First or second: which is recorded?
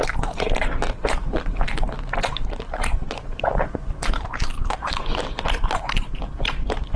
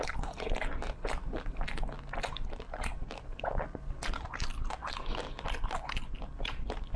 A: second